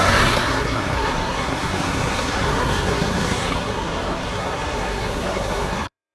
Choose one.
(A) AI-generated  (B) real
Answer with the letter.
A